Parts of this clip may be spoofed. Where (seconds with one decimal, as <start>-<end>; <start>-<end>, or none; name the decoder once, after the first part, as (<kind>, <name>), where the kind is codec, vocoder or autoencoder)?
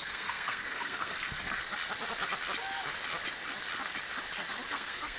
0.0-1.6 (codec, SNAC); 4.7-5.2